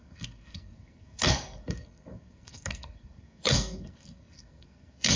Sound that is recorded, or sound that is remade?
remade